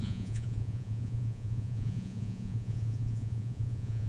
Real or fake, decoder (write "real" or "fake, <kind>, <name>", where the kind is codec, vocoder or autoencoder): fake, vocoder, Vocos